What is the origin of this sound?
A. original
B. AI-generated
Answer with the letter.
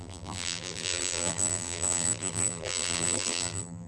B